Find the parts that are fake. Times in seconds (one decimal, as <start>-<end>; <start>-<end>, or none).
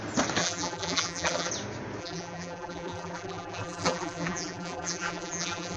0.4-1.5; 2.0-5.8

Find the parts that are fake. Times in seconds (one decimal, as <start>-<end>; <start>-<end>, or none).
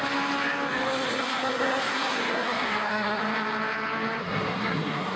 1.1-3.2; 4.2-5.2